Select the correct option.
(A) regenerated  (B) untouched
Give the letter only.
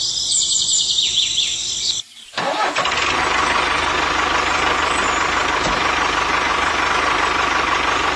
B